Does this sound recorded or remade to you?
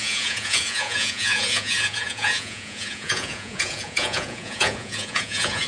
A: remade